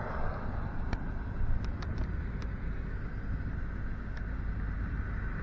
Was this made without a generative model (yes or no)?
yes